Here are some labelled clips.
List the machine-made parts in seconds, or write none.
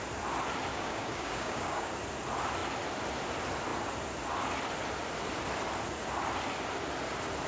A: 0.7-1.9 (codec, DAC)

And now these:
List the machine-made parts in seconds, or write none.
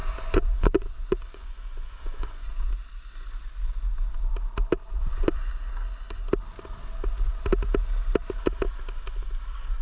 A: 0.0-2.7 (vocoder, Vocos); 4.9-5.4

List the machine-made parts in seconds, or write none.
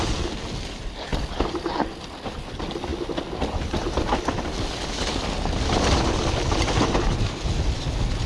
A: 1.1-1.7 (vocoder, BigVGAN v2)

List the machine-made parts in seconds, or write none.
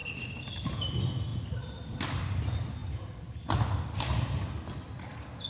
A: 0.0-0.9 (vocoder, BigVGAN v2); 1.3-2.1; 2.8-4.5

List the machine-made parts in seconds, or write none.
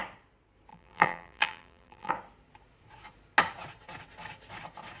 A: 0.7-2.1 (vocoder, BigVGAN v2)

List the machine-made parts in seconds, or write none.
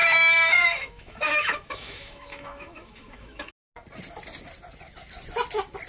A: 0.0-3.5 (autoencoder, DAC-VAE)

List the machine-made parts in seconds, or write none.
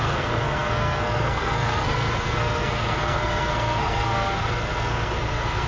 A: 0.0-5.7 (codec, SNAC)